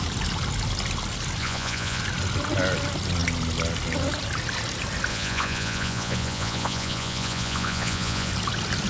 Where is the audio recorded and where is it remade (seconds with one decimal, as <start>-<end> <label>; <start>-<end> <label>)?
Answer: 0.0-1.4 recorded; 1.4-2.0 remade; 2.0-5.1 recorded; 5.1-8.3 remade; 8.3-8.9 recorded